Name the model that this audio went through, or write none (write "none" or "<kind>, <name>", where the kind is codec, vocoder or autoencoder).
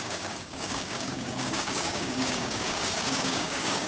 codec, DAC